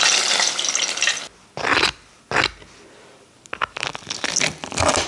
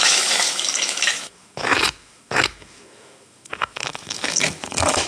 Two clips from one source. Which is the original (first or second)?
first